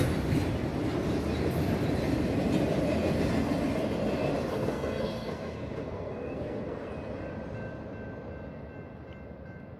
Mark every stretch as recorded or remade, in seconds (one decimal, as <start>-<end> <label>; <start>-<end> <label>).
0.0-4.5 recorded; 4.5-6.9 remade; 6.9-9.8 recorded